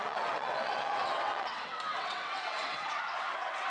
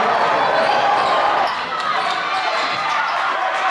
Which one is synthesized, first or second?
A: first